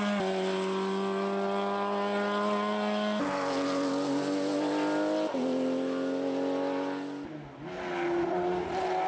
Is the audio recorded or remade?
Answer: recorded